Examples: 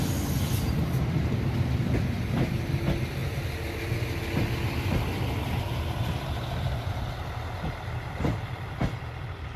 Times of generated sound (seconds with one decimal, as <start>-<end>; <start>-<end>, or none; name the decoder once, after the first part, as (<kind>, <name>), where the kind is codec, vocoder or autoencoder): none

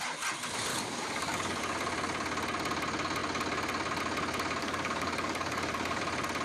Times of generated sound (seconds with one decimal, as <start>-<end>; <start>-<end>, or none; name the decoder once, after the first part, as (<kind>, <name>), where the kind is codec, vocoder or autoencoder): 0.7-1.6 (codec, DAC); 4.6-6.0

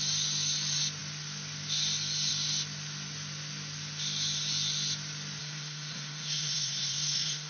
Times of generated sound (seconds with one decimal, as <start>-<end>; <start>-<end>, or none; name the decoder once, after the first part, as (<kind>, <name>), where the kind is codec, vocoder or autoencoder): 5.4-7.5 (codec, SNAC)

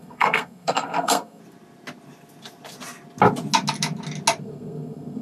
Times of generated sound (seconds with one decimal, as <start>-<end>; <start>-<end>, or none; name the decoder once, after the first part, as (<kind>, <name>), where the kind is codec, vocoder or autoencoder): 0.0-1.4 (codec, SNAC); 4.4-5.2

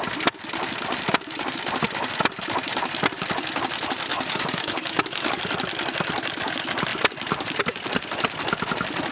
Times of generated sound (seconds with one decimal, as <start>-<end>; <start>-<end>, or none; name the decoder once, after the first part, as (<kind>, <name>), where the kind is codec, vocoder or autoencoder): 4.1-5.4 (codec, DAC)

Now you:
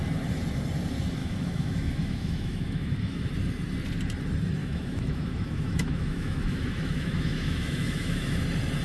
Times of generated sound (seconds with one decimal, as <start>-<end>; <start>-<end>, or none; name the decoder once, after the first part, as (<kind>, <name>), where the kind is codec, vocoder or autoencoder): 1.2-3.3 (autoencoder, DAC-VAE); 4.6-8.4

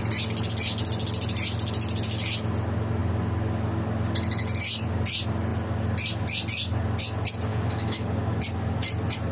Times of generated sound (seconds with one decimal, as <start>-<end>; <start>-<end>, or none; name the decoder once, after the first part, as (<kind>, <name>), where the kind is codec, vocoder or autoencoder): 7.5-8.4 (codec, DAC)